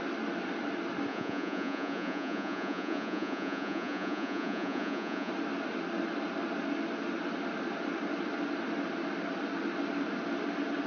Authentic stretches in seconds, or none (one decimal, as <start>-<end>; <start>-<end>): 0.0-1.1; 5.3-10.9